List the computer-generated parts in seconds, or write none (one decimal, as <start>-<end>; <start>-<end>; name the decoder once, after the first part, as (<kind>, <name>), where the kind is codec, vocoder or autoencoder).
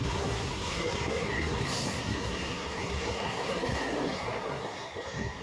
0.0-5.4 (codec, SNAC)